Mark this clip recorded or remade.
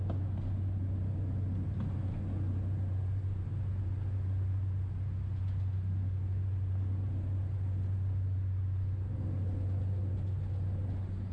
recorded